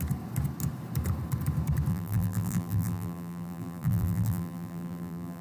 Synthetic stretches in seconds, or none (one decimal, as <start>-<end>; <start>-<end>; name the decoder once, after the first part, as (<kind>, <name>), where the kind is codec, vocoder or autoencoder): 1.9-5.4 (vocoder, BigVGAN v2)